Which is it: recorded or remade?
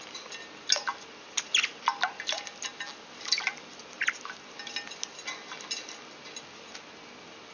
recorded